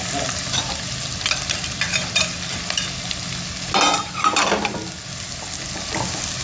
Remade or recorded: recorded